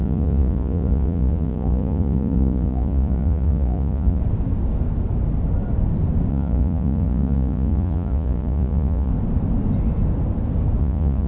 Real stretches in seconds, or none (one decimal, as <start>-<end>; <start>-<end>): 4.2-6.3; 9.1-10.8